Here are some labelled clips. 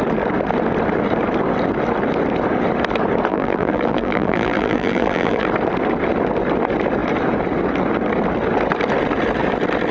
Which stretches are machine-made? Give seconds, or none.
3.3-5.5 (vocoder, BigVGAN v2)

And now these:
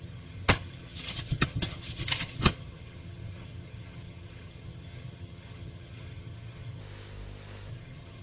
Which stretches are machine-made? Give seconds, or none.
0.0-6.8 (vocoder, HiFi-GAN); 7.7-8.2